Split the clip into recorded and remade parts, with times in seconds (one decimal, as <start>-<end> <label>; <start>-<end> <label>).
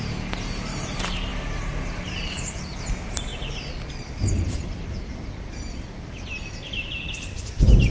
0.0-7.9 recorded